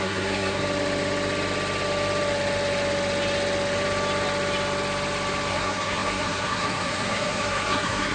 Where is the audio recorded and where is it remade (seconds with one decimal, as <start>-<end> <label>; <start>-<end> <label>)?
0.0-0.6 remade; 0.6-5.5 recorded; 5.5-8.1 remade